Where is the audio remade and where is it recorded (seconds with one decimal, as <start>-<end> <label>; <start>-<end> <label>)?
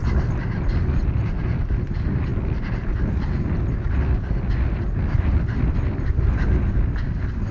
0.0-7.5 recorded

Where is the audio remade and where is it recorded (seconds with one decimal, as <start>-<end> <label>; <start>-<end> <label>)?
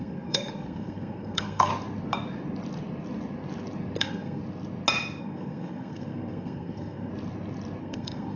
0.0-1.7 remade; 1.7-4.0 recorded; 4.0-4.4 remade; 4.4-5.2 recorded; 5.2-7.1 remade; 7.1-7.8 recorded; 7.8-8.4 remade